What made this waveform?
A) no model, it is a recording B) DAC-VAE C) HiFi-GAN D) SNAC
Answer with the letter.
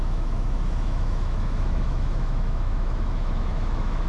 B